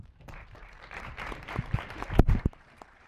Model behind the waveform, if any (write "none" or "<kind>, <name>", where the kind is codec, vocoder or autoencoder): vocoder, BigVGAN v2